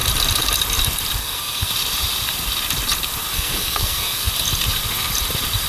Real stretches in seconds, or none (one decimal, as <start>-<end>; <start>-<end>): 0.0-1.2; 1.7-3.3; 4.3-5.7